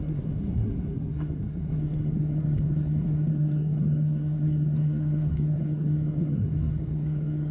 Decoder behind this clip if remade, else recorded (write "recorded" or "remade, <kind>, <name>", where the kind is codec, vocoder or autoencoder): remade, codec, SNAC